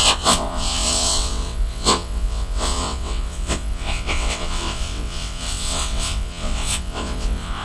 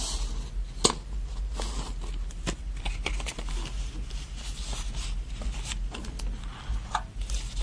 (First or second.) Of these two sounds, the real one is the second